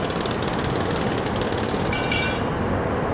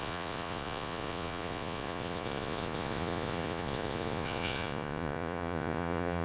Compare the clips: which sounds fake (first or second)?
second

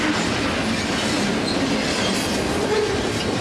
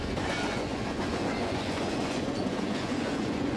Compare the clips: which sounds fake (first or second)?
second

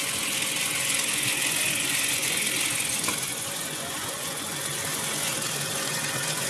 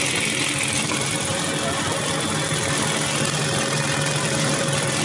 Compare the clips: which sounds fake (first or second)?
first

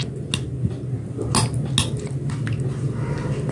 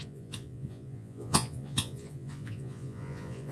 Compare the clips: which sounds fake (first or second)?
second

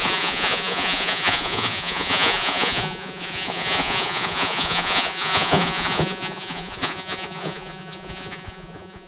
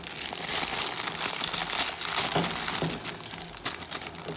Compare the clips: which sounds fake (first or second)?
first